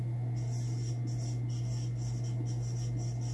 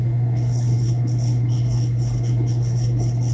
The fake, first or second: second